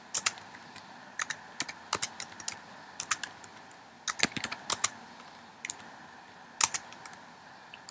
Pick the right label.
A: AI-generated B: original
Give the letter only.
B